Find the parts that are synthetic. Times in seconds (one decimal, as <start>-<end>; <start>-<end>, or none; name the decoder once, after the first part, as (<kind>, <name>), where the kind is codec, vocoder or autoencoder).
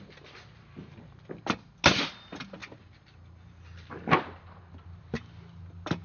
none